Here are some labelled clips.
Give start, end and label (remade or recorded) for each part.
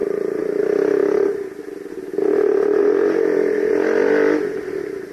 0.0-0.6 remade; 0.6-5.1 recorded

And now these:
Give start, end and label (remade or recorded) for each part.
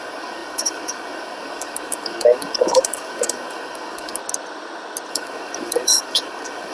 0.0-4.2 remade; 4.2-5.1 recorded; 5.1-6.7 remade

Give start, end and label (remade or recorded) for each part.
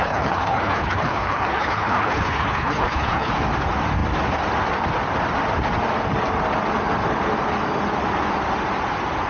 0.0-3.3 remade; 3.3-9.3 recorded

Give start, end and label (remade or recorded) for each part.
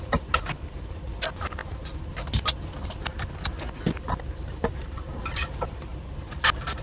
0.0-5.9 recorded; 5.9-6.8 remade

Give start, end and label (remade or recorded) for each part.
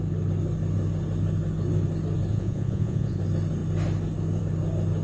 0.0-2.3 recorded; 2.3-3.2 remade; 3.2-5.0 recorded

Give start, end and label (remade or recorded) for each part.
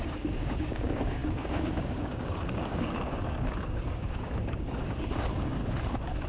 0.0-5.6 remade; 5.6-6.3 recorded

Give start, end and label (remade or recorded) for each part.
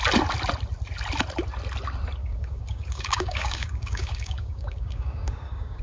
0.0-2.2 recorded; 2.2-5.8 remade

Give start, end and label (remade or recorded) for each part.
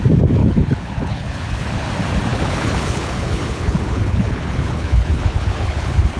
0.0-0.4 recorded; 0.4-1.9 remade; 1.9-2.3 recorded; 2.3-6.2 remade